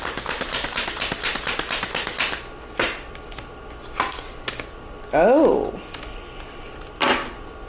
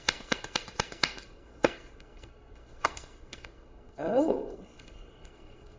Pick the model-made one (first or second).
second